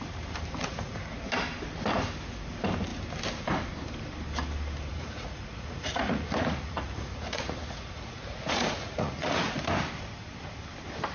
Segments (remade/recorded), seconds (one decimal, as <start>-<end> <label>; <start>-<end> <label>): 0.0-0.6 recorded; 0.6-1.2 remade; 1.2-4.9 recorded; 4.9-9.6 remade; 9.6-11.1 recorded